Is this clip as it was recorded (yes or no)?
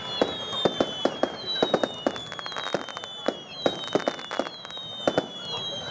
yes